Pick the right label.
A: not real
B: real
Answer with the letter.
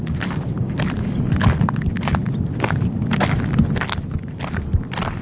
B